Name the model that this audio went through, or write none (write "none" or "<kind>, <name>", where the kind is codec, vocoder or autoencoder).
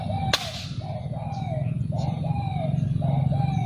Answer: none